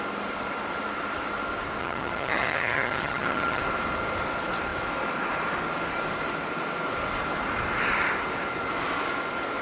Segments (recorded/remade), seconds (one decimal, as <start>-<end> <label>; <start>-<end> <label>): 0.0-1.8 recorded; 1.8-3.6 remade; 3.6-9.6 recorded